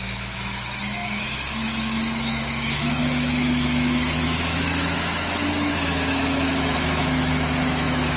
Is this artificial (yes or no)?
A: yes